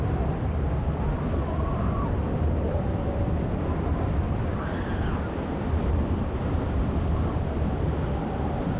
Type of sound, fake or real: fake